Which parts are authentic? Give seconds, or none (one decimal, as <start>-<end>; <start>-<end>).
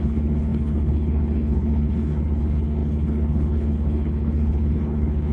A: none